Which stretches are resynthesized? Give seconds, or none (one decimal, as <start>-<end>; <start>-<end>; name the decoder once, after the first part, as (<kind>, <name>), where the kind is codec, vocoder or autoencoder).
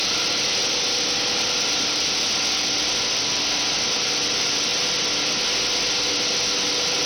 none